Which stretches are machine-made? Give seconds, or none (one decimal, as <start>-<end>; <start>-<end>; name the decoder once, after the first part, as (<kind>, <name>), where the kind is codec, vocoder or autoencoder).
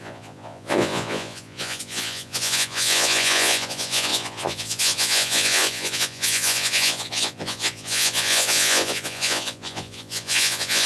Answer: 0.0-10.9 (vocoder, Vocos)